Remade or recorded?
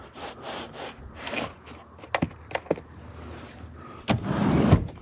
recorded